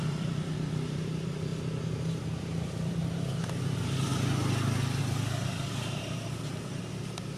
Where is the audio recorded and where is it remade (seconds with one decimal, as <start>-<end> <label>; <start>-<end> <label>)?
0.0-1.5 remade; 1.5-2.3 recorded; 2.3-3.0 remade; 3.0-3.6 recorded; 3.6-4.1 remade; 4.1-5.0 recorded; 5.0-7.4 remade